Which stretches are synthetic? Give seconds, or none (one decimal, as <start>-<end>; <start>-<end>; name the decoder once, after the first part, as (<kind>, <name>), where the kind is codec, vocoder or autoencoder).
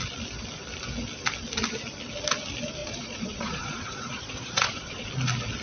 2.8-5.1 (vocoder, Vocos)